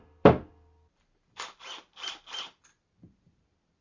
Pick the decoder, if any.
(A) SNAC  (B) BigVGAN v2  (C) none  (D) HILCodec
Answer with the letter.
B